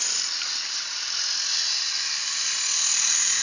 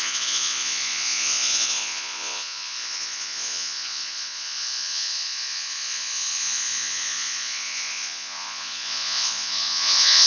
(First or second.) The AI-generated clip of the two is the second